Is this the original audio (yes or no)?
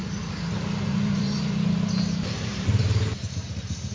no